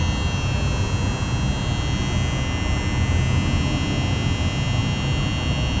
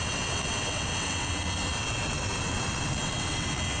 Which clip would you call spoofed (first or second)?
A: second